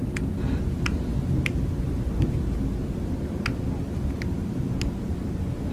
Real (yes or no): yes